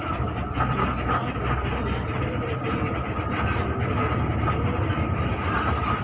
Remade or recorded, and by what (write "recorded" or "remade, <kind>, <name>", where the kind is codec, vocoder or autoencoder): recorded